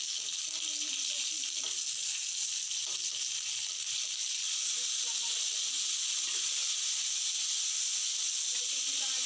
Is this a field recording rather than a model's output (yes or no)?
yes